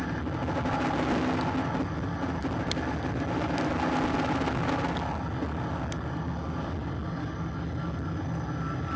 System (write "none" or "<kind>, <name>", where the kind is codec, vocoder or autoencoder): none